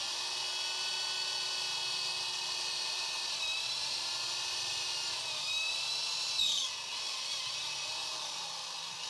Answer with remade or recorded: recorded